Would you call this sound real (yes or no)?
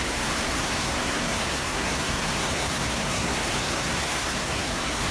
no